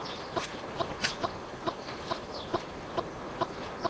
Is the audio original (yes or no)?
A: yes